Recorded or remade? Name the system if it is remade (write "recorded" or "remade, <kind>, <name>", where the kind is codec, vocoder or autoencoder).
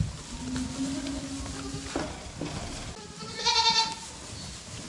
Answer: recorded